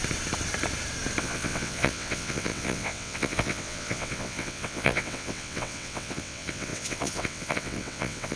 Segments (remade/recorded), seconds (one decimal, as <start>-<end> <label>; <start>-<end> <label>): 0.0-1.2 recorded; 1.2-8.4 remade